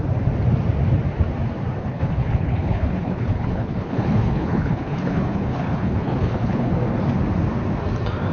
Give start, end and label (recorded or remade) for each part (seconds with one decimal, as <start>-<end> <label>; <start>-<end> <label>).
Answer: 0.0-1.8 recorded; 1.8-6.7 remade; 6.7-8.3 recorded